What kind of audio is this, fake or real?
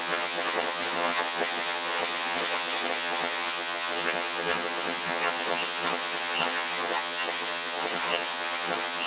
fake